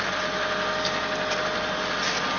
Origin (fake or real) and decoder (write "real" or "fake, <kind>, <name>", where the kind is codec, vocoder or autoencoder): real